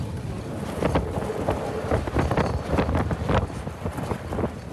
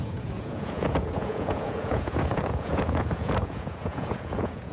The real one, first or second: first